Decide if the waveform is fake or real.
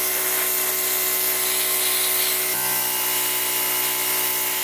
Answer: real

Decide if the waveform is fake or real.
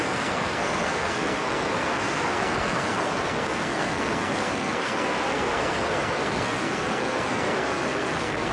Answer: fake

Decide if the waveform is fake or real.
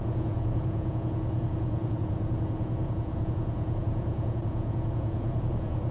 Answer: fake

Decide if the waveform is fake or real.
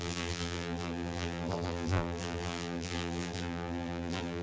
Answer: fake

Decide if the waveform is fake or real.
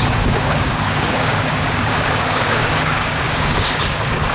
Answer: fake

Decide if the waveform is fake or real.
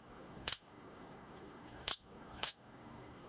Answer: fake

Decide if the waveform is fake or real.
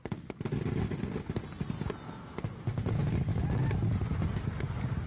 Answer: real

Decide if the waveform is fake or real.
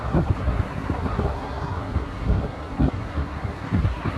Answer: fake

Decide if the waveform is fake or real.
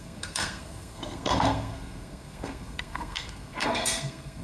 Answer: fake